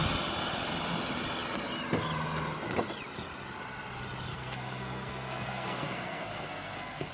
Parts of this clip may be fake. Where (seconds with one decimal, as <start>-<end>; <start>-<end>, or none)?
4.3-7.1